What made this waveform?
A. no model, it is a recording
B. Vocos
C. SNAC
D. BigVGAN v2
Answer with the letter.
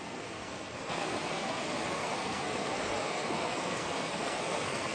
C